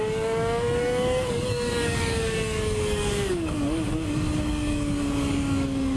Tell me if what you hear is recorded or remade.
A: remade